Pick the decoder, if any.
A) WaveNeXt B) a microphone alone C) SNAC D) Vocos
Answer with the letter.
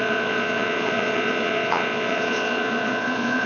D